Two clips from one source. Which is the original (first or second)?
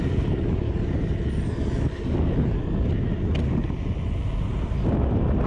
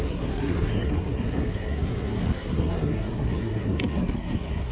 first